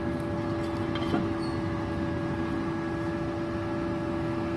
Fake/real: real